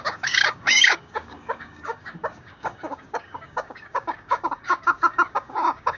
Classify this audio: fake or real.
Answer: fake